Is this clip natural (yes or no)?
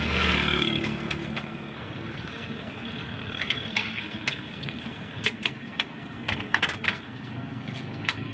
no